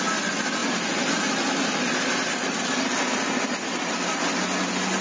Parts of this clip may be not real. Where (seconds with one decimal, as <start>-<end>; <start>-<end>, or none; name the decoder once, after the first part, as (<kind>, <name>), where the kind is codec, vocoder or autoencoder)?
none